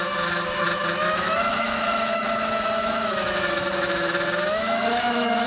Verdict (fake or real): fake